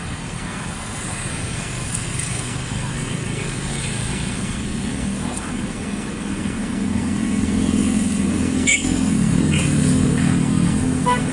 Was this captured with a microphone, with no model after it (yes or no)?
no